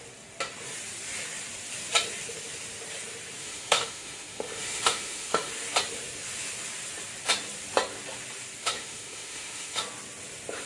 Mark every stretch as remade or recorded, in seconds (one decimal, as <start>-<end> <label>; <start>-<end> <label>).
0.0-3.4 recorded; 3.4-5.5 remade; 5.5-8.6 recorded; 8.6-9.8 remade; 9.8-10.7 recorded